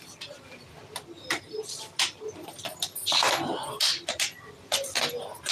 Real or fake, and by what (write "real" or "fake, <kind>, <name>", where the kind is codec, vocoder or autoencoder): real